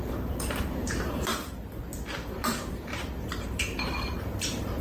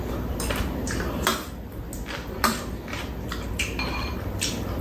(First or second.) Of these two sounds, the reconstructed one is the first